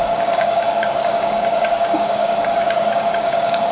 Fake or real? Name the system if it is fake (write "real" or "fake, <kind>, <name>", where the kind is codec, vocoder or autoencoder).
fake, codec, DAC